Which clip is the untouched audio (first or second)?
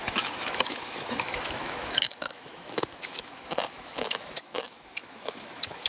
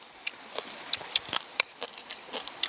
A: second